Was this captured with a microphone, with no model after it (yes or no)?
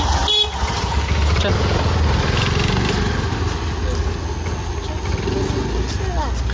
yes